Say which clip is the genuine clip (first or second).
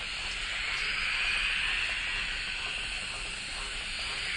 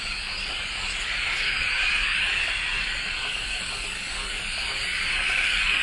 first